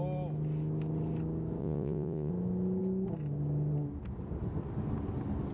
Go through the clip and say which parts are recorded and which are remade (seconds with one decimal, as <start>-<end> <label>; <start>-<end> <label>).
0.0-1.6 recorded; 1.6-2.3 remade; 2.3-5.5 recorded